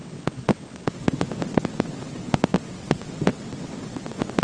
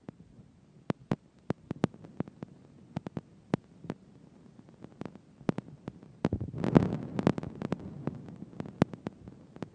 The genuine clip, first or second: second